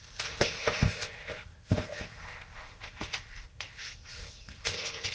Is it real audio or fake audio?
fake